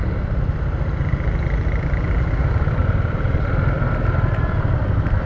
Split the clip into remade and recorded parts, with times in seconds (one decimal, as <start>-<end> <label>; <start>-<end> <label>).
0.0-2.8 recorded; 2.8-5.3 remade